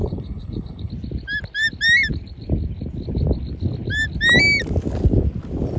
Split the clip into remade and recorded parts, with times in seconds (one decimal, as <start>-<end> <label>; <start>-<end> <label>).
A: 0.0-0.9 remade; 0.9-5.8 recorded